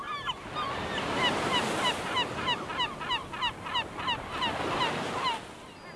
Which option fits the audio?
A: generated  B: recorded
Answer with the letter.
B